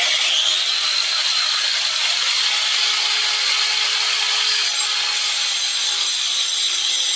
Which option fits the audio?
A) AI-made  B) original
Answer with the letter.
B